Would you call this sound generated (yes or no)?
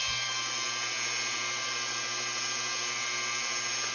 no